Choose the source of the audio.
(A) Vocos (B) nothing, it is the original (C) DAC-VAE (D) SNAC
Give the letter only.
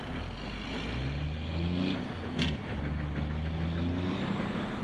B